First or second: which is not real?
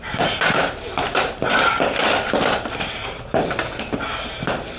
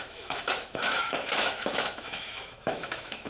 second